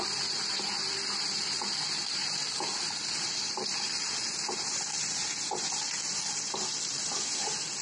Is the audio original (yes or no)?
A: no